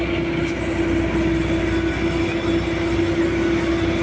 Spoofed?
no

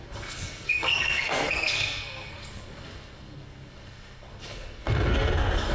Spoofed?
yes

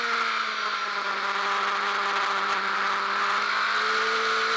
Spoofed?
no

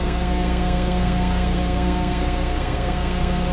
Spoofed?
yes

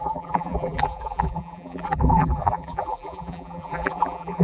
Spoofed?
yes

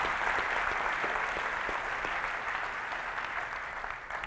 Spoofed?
no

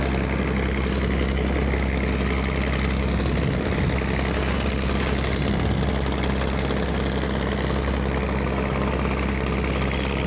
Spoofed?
no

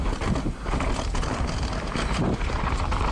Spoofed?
no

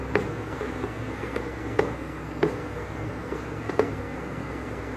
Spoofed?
yes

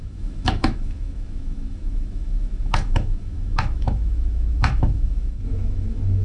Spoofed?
yes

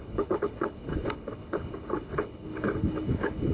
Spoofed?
yes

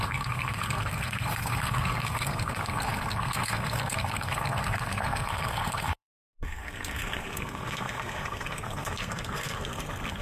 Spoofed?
yes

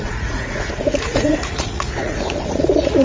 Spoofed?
yes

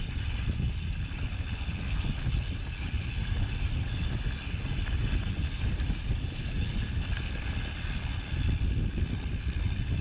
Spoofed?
no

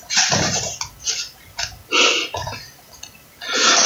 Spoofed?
no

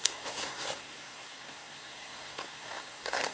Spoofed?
yes